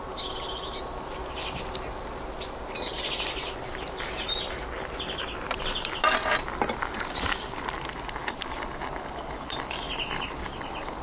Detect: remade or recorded recorded